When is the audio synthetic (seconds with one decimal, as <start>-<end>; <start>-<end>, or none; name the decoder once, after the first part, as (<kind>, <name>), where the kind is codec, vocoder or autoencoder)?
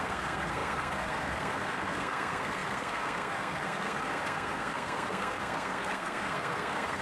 0.0-7.0 (codec, SNAC)